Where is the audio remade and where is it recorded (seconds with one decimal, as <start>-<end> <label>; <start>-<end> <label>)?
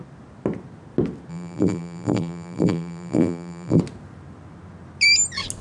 0.0-1.3 recorded; 1.3-3.8 remade; 3.8-5.6 recorded